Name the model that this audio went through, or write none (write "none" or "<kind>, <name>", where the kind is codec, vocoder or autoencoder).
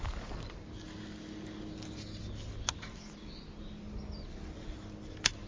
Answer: none